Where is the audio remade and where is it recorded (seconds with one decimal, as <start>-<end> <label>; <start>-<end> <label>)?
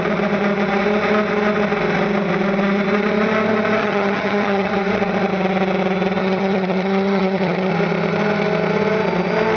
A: 0.0-3.8 recorded; 3.8-4.7 remade; 4.7-6.2 recorded; 6.2-7.7 remade; 7.7-9.6 recorded